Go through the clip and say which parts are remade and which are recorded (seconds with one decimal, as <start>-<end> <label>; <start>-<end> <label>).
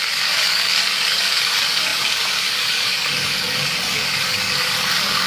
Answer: 0.0-5.3 remade